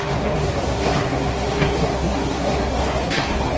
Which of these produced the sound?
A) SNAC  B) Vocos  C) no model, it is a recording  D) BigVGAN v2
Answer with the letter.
A